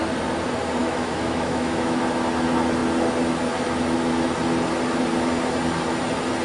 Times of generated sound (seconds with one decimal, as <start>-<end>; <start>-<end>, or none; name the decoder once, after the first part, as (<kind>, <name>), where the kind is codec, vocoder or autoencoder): 0.8-2.0 (autoencoder, DAC-VAE)